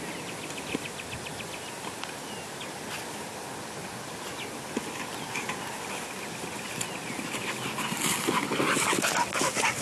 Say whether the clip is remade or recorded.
recorded